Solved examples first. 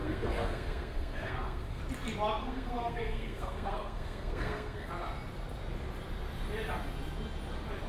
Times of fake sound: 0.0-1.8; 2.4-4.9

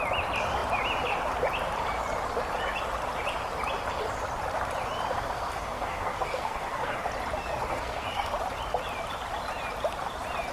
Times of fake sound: 5.1-7.1; 7.7-8.3